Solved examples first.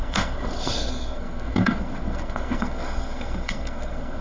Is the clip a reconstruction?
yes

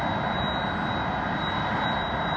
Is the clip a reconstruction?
no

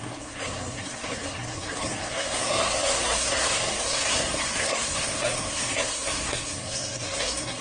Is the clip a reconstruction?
yes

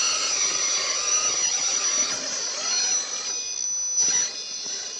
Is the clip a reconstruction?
no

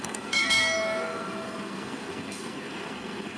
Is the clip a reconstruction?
yes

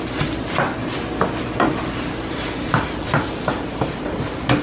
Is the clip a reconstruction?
no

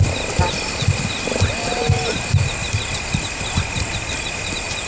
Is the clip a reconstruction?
no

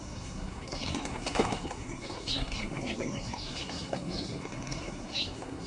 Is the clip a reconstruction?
yes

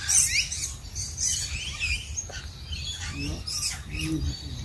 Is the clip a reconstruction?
no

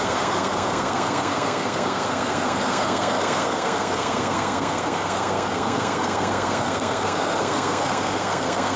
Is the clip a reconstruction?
yes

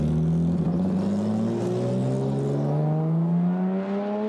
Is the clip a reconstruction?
no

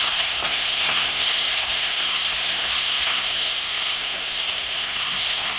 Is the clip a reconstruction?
yes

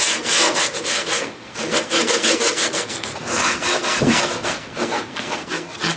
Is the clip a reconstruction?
yes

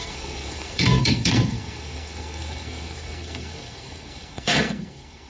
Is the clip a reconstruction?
yes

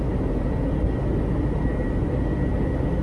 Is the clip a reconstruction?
no